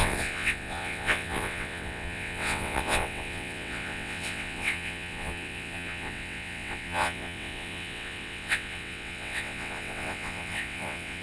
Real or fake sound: fake